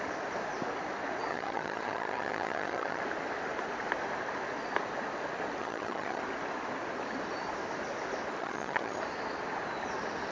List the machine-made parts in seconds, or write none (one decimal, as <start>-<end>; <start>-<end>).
1.3-3.0; 5.6-6.2; 8.4-9.0